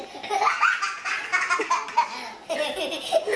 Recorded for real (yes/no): yes